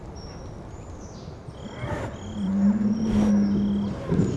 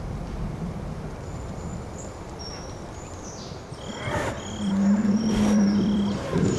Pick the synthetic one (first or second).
second